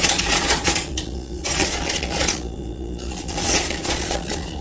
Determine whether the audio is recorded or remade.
remade